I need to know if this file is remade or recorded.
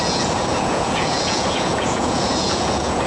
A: remade